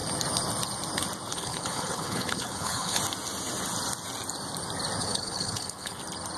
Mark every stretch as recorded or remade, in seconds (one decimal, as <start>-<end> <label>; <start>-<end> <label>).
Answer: 0.0-1.3 recorded; 1.3-3.0 remade; 3.0-5.0 recorded; 5.0-6.0 remade; 6.0-6.4 recorded